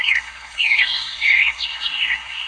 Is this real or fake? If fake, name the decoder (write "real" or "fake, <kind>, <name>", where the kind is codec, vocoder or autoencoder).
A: fake, codec, SNAC